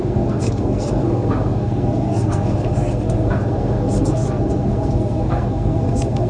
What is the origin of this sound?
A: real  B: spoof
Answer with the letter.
B